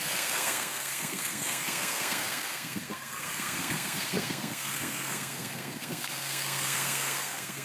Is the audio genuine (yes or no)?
no